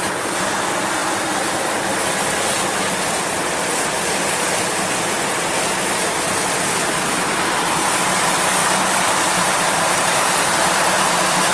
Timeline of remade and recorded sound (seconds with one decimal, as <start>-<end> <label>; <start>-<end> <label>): 0.0-8.6 recorded; 8.6-9.2 remade; 9.2-11.5 recorded